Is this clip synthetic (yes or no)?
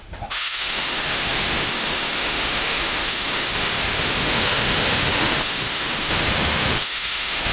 yes